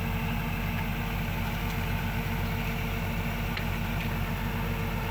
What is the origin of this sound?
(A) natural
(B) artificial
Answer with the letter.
A